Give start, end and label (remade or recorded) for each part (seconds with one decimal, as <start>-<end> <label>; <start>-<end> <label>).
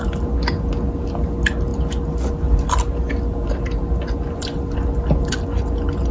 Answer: 0.0-6.1 recorded